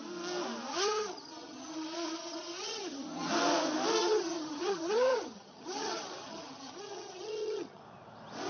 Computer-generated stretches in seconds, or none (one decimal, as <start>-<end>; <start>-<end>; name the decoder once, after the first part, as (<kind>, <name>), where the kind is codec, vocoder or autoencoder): 0.7-3.3 (vocoder, HiFi-GAN); 4.0-7.8